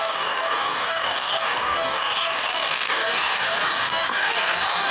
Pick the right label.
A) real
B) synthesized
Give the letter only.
B